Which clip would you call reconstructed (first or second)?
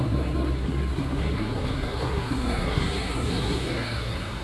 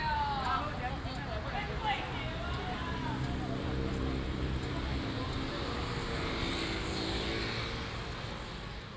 first